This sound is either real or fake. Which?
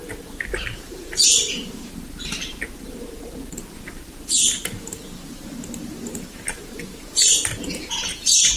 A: fake